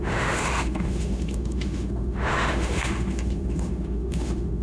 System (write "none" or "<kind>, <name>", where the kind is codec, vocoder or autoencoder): autoencoder, DAC-VAE